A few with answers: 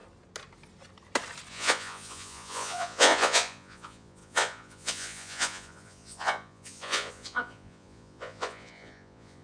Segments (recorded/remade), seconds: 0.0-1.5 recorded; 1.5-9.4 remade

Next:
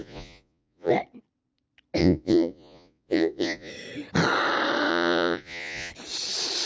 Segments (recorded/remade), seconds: 0.0-0.9 remade; 0.9-2.0 recorded; 2.0-3.7 remade; 3.7-4.9 recorded; 4.9-5.9 remade; 5.9-6.7 recorded